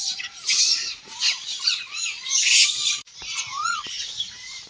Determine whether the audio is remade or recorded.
remade